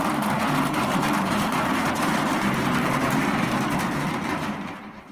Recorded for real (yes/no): no